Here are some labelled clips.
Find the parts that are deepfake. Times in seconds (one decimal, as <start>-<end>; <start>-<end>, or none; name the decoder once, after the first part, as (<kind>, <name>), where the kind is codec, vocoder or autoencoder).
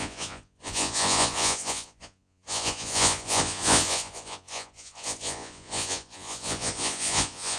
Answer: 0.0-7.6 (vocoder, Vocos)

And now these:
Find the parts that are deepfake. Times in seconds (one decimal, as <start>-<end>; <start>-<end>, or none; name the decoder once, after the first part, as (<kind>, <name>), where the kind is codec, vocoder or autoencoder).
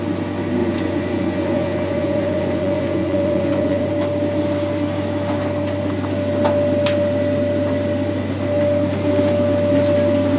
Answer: 0.6-3.9 (vocoder, Vocos)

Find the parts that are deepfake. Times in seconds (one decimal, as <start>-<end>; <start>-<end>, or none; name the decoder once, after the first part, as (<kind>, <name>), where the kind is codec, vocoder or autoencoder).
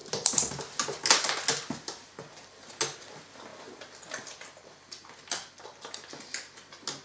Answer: 0.0-0.5 (vocoder, BigVGAN v2); 3.5-6.1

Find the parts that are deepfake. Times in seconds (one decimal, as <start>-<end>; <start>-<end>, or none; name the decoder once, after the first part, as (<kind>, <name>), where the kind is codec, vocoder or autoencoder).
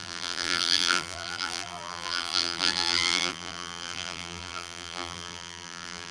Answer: 0.0-6.1 (vocoder, BigVGAN v2)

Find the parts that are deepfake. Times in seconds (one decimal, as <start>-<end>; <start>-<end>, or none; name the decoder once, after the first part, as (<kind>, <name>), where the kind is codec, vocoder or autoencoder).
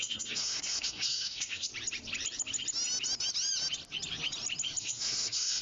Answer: 0.0-1.7 (codec, SNAC); 4.8-5.6